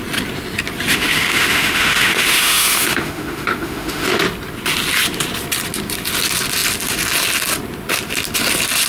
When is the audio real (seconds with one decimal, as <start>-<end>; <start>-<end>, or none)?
0.0-0.9; 4.2-8.9